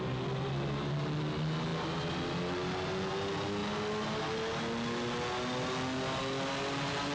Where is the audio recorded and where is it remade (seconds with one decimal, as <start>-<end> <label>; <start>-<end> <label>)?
0.0-7.1 recorded